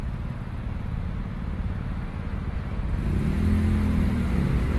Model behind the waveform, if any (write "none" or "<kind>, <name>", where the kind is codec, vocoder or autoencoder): none